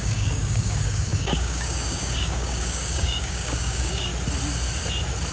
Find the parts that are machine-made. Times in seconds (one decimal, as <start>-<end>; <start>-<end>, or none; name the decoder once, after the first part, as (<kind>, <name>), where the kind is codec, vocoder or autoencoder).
0.0-4.1 (codec, DAC)